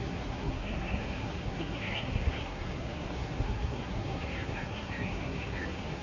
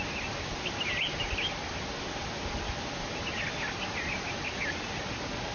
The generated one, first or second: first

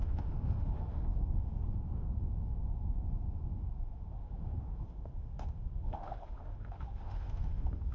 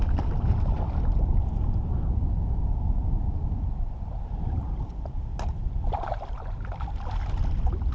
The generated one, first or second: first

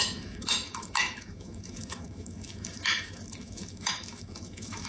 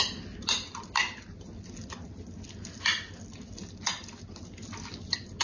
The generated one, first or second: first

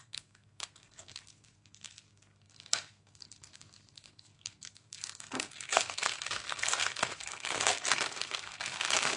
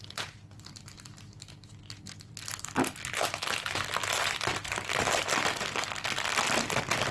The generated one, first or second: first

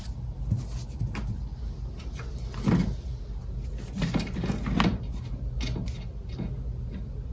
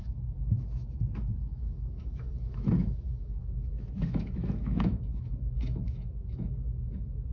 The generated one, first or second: second